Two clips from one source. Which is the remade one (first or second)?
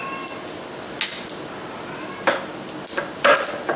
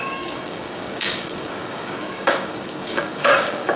second